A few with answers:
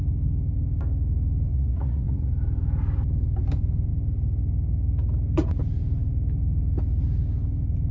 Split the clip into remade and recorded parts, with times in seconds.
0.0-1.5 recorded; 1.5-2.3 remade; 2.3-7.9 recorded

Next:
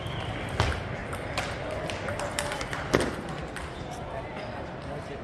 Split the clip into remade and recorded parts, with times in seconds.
0.0-1.0 remade; 1.0-2.9 recorded; 2.9-3.4 remade; 3.4-4.3 recorded; 4.3-5.2 remade